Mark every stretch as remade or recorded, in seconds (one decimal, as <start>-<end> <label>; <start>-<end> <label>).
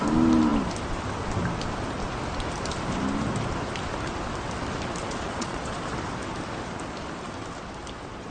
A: 0.0-5.0 recorded; 5.0-5.8 remade; 5.8-8.3 recorded